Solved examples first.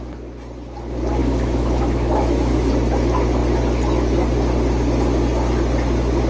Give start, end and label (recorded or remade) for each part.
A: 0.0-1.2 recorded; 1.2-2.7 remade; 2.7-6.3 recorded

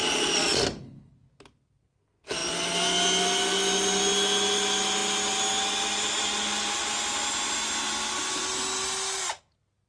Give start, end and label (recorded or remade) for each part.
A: 0.0-0.6 remade; 0.6-9.9 recorded

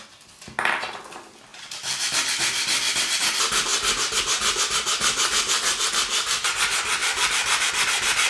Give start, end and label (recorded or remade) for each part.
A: 0.0-1.5 recorded; 1.5-2.2 remade; 2.2-7.0 recorded; 7.0-7.7 remade; 7.7-8.3 recorded

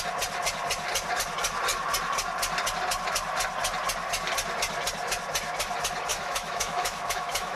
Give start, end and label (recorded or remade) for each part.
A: 0.0-6.1 recorded; 6.1-7.6 remade

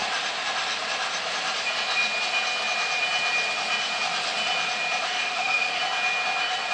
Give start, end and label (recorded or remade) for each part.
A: 0.0-5.0 recorded; 5.0-5.8 remade; 5.8-6.7 recorded